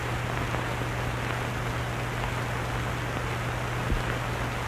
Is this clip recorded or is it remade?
recorded